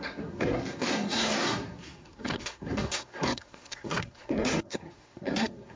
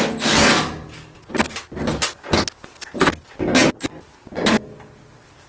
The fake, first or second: first